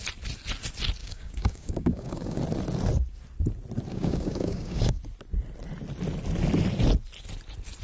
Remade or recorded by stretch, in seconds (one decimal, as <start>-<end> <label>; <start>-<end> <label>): 0.0-1.0 recorded; 1.0-2.4 remade; 2.4-3.9 recorded; 3.9-5.0 remade; 5.0-7.8 recorded